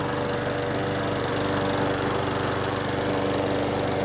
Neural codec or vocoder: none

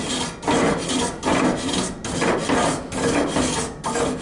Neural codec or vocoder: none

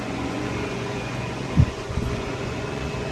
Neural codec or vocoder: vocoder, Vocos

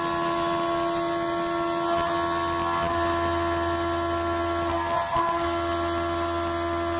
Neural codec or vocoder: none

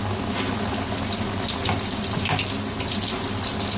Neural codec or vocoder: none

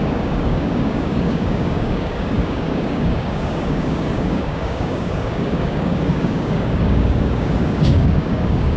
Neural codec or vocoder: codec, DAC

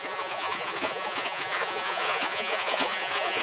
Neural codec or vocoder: vocoder, Vocos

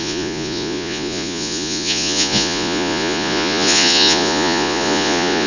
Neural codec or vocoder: vocoder, Vocos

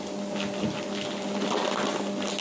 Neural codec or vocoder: none